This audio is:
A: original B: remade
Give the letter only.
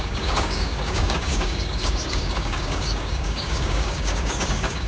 B